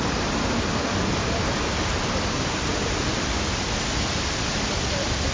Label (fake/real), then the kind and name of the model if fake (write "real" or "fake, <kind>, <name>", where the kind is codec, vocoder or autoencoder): real